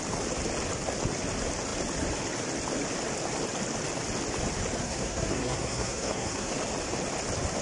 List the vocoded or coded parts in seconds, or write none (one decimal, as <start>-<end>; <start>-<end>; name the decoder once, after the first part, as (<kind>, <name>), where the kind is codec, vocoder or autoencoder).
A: 4.8-6.5 (codec, SNAC)